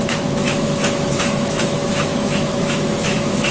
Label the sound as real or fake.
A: fake